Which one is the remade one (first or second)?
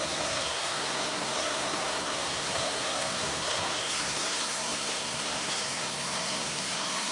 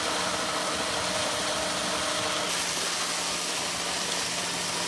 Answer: first